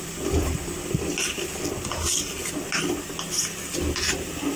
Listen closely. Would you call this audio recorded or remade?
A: recorded